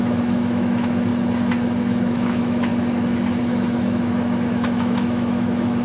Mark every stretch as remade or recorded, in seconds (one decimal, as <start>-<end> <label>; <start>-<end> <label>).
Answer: 0.0-1.1 remade; 1.1-2.1 recorded; 2.1-2.7 remade; 2.7-3.4 recorded; 3.4-5.8 remade